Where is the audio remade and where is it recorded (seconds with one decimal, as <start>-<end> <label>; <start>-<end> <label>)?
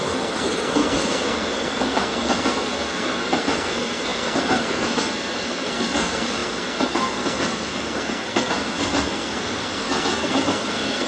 0.0-11.1 remade